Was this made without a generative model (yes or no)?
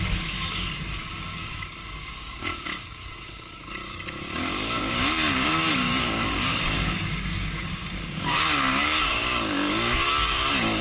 no